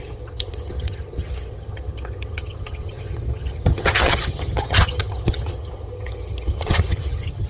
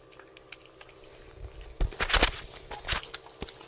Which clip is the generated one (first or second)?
first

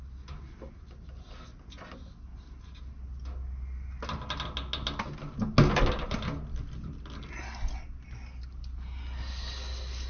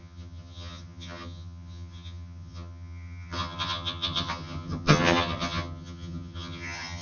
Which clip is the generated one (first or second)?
second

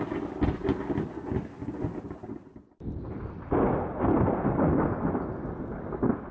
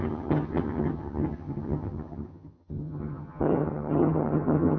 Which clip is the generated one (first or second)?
second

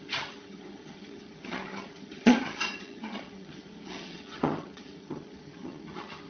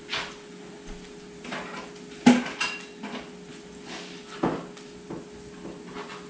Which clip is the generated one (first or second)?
first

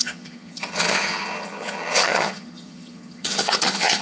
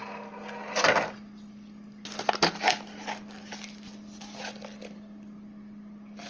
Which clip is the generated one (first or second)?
first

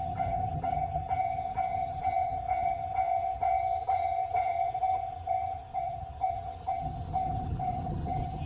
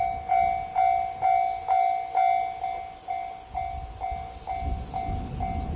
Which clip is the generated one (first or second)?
first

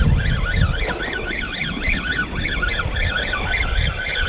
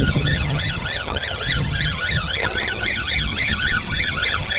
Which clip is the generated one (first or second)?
second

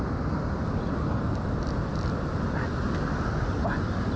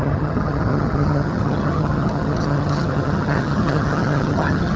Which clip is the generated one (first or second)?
second